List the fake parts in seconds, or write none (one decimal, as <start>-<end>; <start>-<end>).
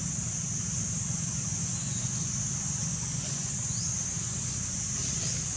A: 1.6-2.4; 2.9-4.8